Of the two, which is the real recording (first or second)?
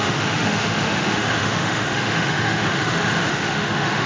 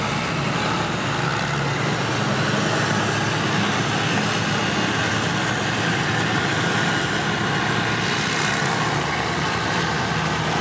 second